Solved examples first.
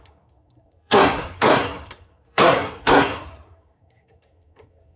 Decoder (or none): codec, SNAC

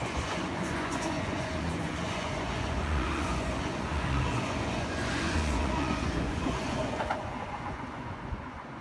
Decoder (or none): vocoder, Vocos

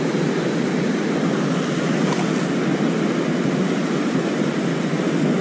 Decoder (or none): none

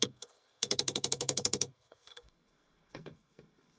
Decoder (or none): codec, SNAC